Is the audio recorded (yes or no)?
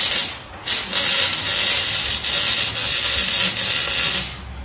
yes